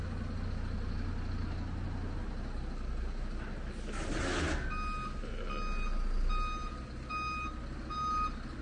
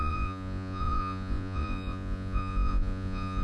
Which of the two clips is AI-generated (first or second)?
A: second